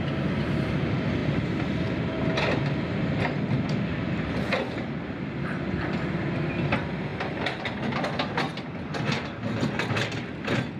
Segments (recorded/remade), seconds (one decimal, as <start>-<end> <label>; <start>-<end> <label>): 0.0-10.8 recorded